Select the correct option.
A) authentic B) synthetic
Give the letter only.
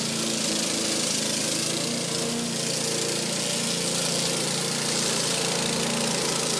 A